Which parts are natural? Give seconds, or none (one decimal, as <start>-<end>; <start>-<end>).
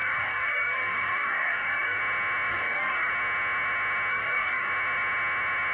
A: 2.0-2.5; 3.1-4.1; 4.7-5.7